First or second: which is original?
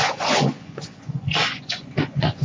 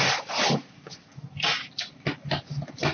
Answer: second